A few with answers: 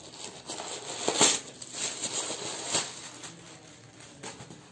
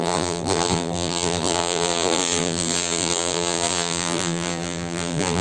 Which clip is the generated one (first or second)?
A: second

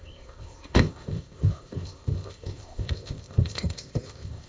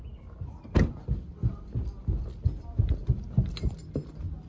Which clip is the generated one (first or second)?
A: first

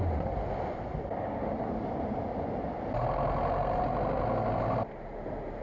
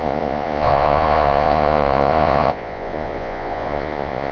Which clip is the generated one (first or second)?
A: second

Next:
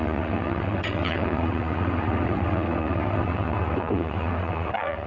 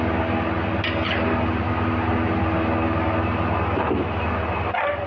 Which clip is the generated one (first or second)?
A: first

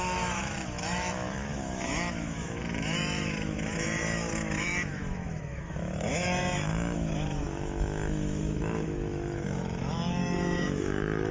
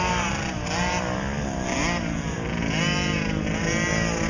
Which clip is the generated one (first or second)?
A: first